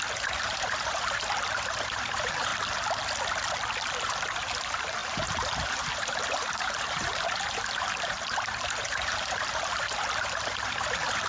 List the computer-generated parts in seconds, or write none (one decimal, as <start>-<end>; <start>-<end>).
0.0-2.5; 3.9-11.3